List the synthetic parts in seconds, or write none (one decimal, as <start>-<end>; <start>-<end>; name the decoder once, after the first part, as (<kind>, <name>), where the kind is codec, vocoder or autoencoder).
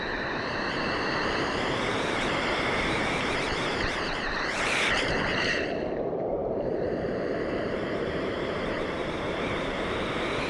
0.0-10.5 (vocoder, BigVGAN v2)